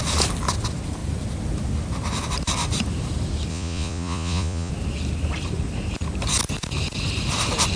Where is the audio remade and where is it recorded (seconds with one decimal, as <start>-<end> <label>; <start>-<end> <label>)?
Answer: 0.0-3.5 recorded; 3.5-4.7 remade; 4.7-7.8 recorded

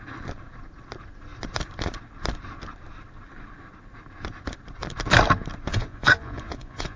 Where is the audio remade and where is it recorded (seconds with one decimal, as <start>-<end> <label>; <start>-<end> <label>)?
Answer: 0.0-5.7 recorded; 5.7-7.0 remade

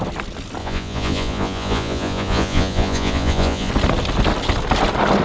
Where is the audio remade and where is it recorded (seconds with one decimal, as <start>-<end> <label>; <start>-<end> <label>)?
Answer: 0.0-0.6 recorded; 0.6-3.7 remade; 3.7-5.2 recorded

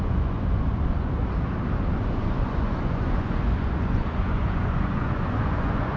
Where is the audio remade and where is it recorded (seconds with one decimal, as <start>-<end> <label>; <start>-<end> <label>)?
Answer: 0.0-1.2 remade; 1.2-1.9 recorded; 1.9-6.0 remade

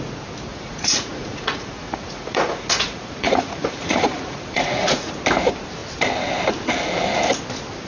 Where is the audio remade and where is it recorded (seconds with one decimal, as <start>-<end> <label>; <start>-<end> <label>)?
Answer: 0.0-0.5 recorded; 0.5-5.1 remade; 5.1-7.9 recorded

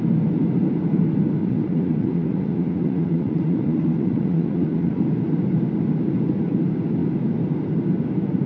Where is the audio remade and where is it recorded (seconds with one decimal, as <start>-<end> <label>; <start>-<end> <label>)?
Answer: 0.0-1.4 recorded; 1.4-5.0 remade; 5.0-8.5 recorded

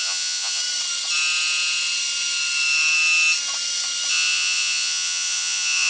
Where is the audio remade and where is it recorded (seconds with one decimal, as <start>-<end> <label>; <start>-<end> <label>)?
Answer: 0.0-0.6 remade; 0.6-4.1 recorded; 4.1-5.9 remade